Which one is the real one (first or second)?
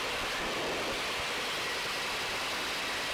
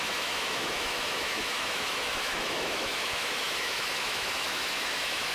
first